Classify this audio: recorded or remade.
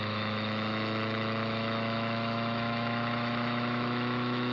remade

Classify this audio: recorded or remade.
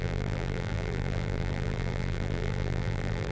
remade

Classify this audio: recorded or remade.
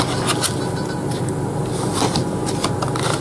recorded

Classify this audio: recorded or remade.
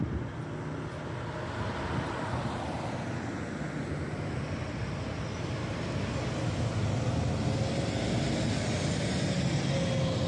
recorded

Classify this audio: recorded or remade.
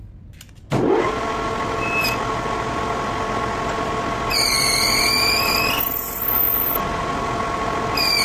recorded